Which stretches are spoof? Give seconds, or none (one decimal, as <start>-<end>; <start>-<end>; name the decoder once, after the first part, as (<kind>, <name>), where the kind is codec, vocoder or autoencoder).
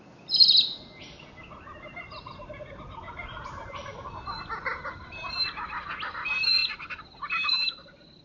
none